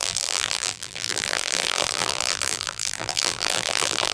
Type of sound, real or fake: fake